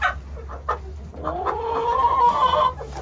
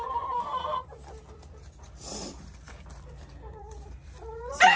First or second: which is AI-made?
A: second